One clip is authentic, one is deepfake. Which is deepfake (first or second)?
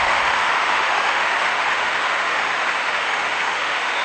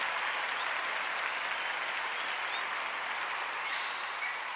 first